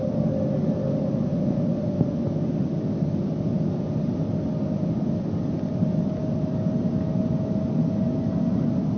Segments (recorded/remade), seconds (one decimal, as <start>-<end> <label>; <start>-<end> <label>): 0.0-9.0 recorded